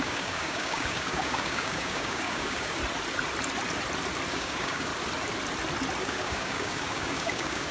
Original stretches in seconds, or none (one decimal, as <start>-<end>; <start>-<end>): 2.8-4.3; 4.9-6.0